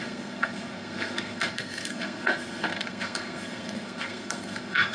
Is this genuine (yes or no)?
no